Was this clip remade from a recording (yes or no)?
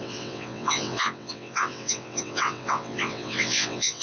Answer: yes